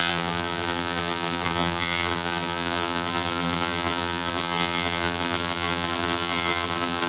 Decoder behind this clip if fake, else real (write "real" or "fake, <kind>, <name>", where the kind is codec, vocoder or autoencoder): fake, vocoder, BigVGAN v2